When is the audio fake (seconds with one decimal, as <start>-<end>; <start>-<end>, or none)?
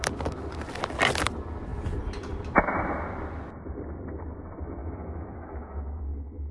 4.8-6.0